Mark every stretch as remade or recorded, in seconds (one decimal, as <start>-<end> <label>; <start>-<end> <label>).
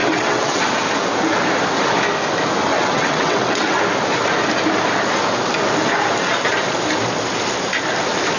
0.0-0.6 remade; 0.6-2.7 recorded; 2.7-3.8 remade; 3.8-8.4 recorded